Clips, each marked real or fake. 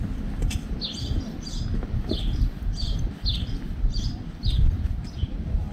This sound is fake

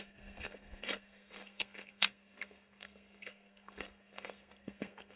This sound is fake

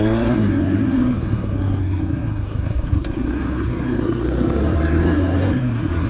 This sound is fake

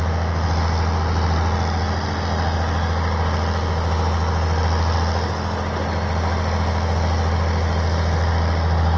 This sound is real